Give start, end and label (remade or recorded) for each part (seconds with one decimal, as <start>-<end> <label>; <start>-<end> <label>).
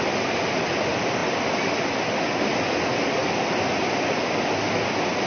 0.0-5.3 recorded